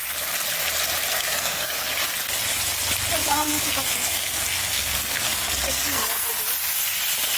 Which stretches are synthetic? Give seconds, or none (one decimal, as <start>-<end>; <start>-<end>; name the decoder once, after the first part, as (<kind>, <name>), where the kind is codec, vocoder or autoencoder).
1.1-1.9 (codec, SNAC); 3.2-6.3